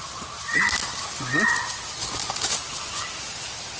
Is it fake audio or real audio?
real